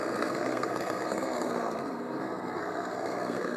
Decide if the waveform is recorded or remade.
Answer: remade